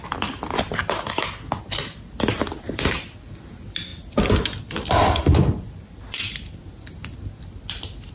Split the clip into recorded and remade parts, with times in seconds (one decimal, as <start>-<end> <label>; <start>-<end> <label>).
0.0-0.8 remade; 0.8-1.6 recorded; 1.6-3.9 remade; 3.9-4.6 recorded; 4.6-8.1 remade